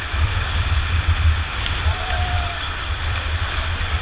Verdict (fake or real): fake